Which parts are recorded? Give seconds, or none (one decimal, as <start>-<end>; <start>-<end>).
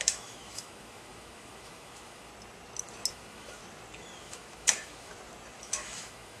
2.3-3.1; 3.6-4.2; 5.1-5.6